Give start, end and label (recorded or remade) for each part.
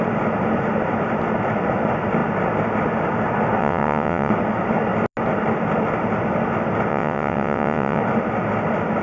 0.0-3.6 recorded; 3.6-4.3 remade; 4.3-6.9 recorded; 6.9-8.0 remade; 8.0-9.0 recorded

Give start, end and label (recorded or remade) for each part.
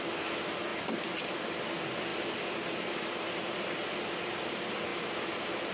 0.0-5.7 recorded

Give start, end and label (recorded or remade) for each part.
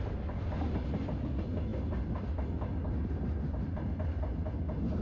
0.0-5.0 recorded